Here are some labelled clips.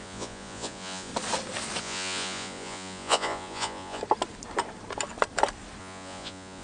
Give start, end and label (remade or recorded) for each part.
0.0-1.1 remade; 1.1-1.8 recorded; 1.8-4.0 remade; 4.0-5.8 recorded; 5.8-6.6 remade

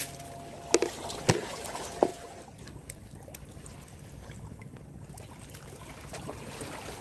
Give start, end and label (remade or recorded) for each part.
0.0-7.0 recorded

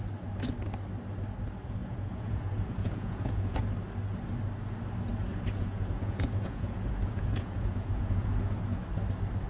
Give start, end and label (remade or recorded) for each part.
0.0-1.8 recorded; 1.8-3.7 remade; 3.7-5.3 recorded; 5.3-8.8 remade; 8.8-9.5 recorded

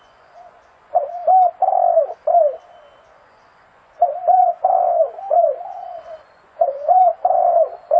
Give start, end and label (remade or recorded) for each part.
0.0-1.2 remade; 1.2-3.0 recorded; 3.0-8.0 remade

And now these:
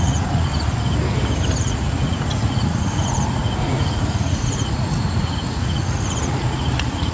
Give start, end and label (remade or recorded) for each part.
0.0-0.5 remade; 0.5-1.6 recorded; 1.6-7.1 remade